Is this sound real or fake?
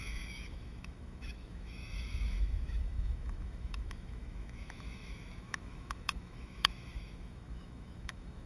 fake